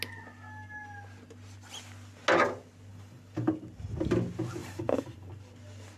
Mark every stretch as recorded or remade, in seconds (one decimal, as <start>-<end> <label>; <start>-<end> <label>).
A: 0.0-2.9 recorded; 2.9-3.5 remade; 3.5-4.6 recorded; 4.6-5.3 remade; 5.3-6.0 recorded